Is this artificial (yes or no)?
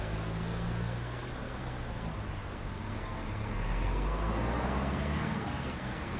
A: yes